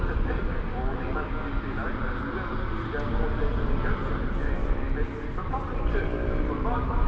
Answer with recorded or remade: recorded